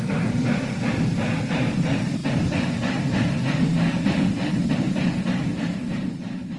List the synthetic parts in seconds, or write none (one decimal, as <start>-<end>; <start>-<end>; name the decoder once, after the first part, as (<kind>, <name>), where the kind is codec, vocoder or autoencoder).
0.0-2.2 (vocoder, BigVGAN v2); 4.5-6.6

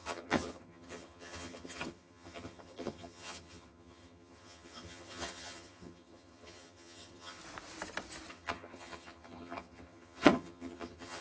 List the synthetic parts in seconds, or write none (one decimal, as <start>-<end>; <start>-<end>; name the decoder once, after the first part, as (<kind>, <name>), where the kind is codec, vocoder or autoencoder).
0.0-7.4 (vocoder, HiFi-GAN); 8.3-11.2

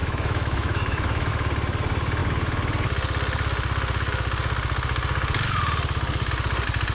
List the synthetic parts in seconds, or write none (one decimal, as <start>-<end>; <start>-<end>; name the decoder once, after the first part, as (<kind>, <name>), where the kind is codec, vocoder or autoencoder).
0.0-1.3 (autoencoder, DAC-VAE)

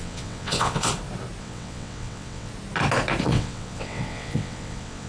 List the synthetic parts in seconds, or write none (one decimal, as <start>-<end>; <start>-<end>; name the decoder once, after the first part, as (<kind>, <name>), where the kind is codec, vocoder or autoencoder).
0.0-0.9 (vocoder, WaveNeXt); 1.4-2.5; 3.2-5.1

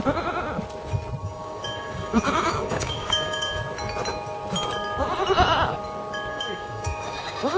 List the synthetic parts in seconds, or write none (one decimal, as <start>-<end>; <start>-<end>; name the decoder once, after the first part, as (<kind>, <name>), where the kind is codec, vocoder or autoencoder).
1.2-3.6 (codec, DAC); 6.3-7.6

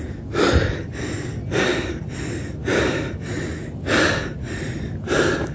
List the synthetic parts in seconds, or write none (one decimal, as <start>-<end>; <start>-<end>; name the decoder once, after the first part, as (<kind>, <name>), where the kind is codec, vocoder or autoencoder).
none

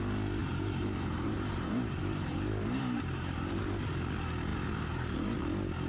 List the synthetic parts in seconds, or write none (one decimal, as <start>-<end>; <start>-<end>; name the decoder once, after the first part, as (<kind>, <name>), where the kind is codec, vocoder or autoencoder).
0.4-3.9 (vocoder, BigVGAN v2)